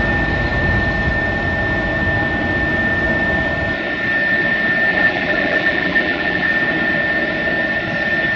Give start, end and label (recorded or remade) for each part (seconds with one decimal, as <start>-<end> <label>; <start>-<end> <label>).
0.0-4.9 recorded; 4.9-6.5 remade; 6.5-8.4 recorded